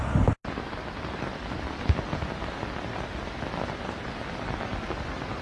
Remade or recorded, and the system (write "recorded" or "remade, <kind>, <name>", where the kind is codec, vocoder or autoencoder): recorded